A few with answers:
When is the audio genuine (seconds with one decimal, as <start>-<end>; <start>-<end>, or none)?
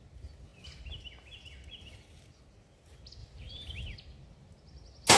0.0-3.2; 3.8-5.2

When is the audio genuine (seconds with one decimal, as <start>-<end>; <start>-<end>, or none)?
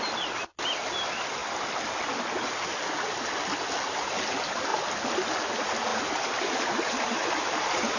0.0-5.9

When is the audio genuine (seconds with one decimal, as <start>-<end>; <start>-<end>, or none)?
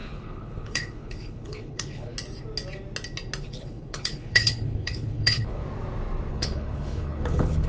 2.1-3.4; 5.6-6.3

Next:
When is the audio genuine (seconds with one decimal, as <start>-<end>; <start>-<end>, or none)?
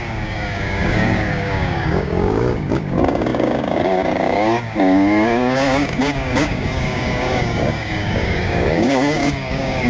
none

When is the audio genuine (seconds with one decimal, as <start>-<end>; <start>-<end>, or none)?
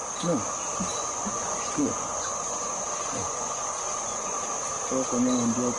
0.0-0.9; 4.4-5.8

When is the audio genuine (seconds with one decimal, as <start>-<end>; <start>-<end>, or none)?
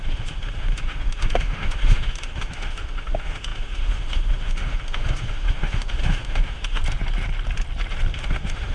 6.8-8.1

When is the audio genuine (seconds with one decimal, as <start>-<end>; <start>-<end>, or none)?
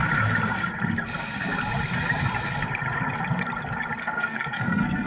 0.0-4.0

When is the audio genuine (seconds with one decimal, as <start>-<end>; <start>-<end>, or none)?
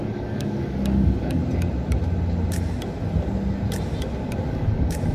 1.4-4.5